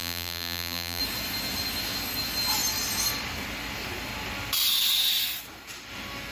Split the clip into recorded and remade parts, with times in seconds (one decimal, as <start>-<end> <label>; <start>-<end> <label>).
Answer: 0.0-1.0 remade; 1.0-6.3 recorded